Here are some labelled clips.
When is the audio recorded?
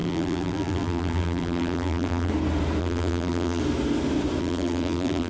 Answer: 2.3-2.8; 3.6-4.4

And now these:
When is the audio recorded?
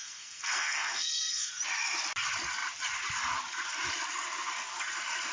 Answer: 1.5-5.3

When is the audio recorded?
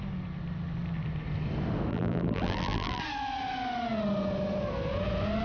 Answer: 0.0-1.9; 3.0-5.4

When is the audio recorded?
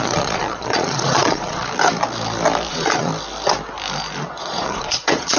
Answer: 1.6-2.7; 3.1-4.2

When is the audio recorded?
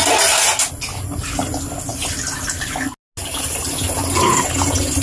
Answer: 0.0-5.0